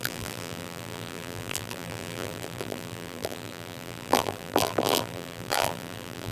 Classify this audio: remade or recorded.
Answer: remade